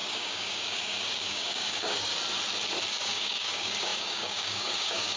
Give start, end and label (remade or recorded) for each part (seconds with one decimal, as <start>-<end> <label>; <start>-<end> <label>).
0.0-2.1 remade; 2.1-2.9 recorded; 2.9-5.2 remade